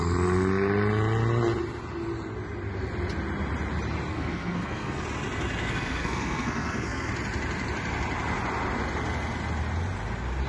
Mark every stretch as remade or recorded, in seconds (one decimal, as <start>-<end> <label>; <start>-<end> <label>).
0.0-4.1 recorded; 4.1-5.0 remade; 5.0-5.6 recorded; 5.6-7.1 remade; 7.1-10.5 recorded